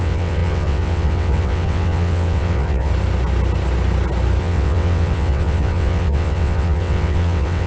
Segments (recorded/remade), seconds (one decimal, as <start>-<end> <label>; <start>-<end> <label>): 0.0-2.9 remade; 2.9-4.4 recorded; 4.4-7.7 remade